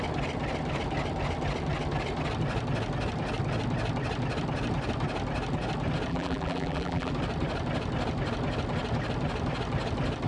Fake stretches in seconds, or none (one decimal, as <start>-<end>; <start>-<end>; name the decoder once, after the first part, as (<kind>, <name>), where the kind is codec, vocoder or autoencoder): 6.1-7.1 (vocoder, BigVGAN v2)